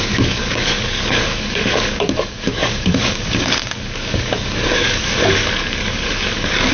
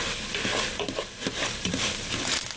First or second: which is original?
second